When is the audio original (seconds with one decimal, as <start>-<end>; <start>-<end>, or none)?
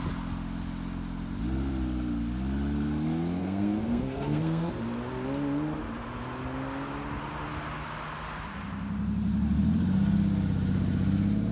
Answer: 0.0-3.4; 4.7-11.5